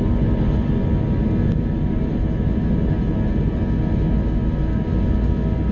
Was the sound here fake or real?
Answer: real